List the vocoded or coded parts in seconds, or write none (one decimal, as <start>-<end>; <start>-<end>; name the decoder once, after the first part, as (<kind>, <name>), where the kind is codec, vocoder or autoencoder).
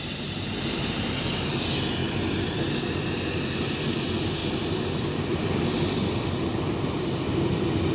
none